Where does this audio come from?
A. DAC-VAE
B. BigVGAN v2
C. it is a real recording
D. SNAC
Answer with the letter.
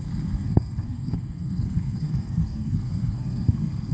D